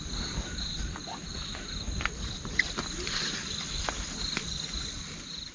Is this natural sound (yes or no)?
yes